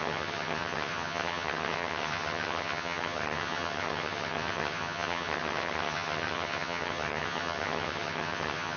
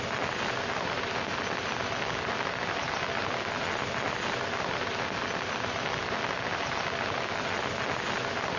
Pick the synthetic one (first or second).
first